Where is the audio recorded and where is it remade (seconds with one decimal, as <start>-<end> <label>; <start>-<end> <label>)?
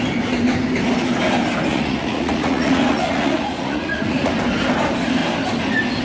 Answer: 0.0-1.7 recorded; 1.7-4.3 remade; 4.3-6.0 recorded